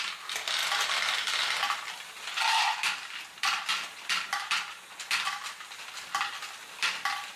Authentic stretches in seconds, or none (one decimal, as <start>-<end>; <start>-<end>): 0.0-7.4